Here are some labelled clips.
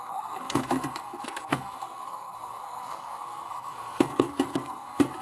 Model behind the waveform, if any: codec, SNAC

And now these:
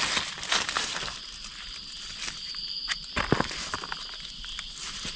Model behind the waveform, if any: none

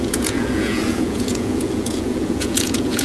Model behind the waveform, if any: vocoder, Vocos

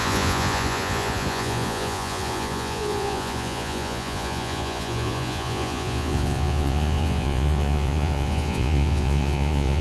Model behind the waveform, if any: vocoder, Vocos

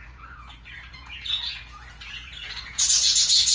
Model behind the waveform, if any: vocoder, Vocos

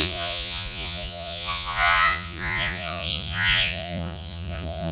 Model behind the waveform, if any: vocoder, Vocos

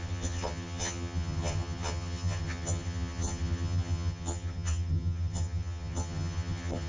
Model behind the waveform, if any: vocoder, HiFi-GAN